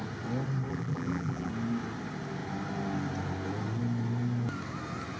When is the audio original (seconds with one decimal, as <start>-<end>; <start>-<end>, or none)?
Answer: 0.0-0.7; 1.5-5.2